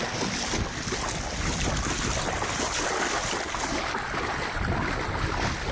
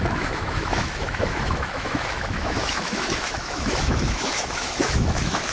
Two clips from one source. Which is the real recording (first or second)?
first